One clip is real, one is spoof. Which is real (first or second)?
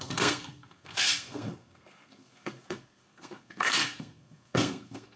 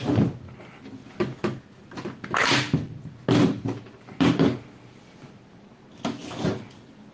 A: second